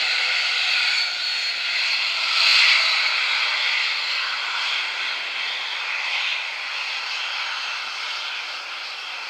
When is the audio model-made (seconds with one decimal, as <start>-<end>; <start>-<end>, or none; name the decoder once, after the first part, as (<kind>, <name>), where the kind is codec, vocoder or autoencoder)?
0.0-6.3 (vocoder, BigVGAN v2)